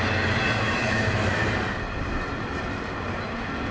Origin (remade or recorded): recorded